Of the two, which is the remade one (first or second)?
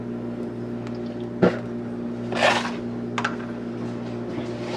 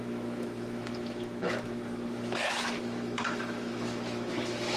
second